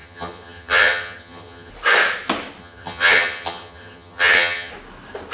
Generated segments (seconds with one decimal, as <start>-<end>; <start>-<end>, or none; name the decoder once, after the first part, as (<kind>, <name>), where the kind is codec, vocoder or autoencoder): 0.0-1.7 (vocoder, HiFi-GAN); 2.6-4.7